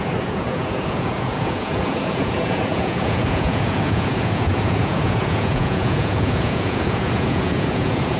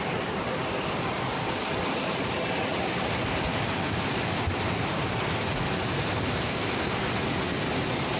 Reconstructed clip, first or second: first